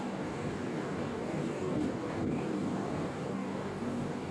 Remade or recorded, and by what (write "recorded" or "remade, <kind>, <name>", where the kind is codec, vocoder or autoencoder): remade, codec, DAC